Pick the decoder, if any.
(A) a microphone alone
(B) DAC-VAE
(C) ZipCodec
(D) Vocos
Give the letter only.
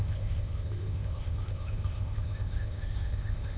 C